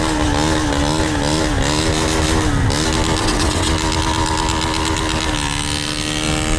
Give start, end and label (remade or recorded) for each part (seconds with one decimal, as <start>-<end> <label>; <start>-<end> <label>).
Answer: 0.0-3.2 recorded; 3.2-3.7 remade; 3.7-6.6 recorded